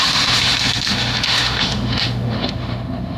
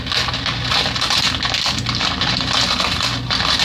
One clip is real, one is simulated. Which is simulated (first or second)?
first